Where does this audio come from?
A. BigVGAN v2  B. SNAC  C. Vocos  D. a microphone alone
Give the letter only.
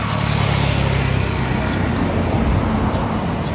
D